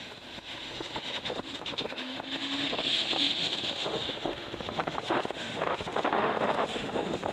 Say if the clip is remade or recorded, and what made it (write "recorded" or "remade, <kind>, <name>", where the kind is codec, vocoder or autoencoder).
remade, autoencoder, DAC-VAE